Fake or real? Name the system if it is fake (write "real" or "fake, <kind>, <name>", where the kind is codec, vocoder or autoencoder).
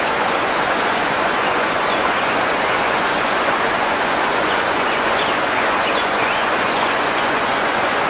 fake, vocoder, Vocos